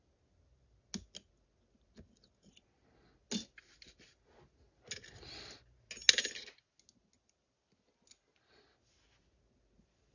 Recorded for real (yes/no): yes